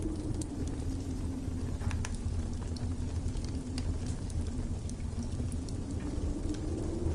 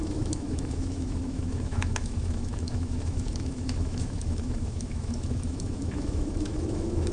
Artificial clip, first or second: second